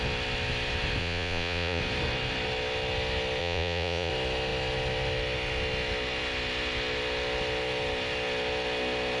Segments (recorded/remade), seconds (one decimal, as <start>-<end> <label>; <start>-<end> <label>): 0.0-1.0 recorded; 1.0-1.8 remade; 1.8-3.4 recorded; 3.4-4.1 remade; 4.1-9.2 recorded